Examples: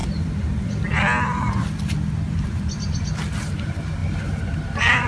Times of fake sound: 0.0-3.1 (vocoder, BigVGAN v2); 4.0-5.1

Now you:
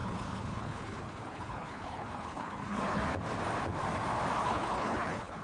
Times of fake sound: 0.0-3.0 (codec, HILCodec); 4.4-5.4

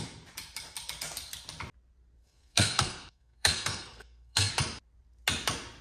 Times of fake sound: 2.2-4.5 (codec, SNAC)

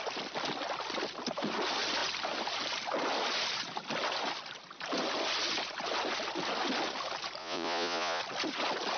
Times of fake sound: 7.4-8.2 (vocoder, Vocos)

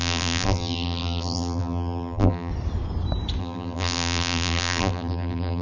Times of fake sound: 0.0-2.5 (vocoder, BigVGAN v2); 3.4-5.6

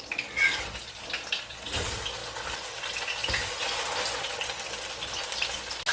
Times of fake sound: none